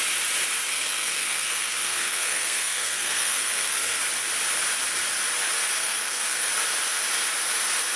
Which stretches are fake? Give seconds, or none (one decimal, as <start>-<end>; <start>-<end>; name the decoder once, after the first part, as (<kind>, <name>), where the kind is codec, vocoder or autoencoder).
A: 0.7-4.0 (codec, SNAC); 5.8-6.5